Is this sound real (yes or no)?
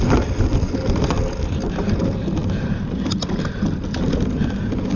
yes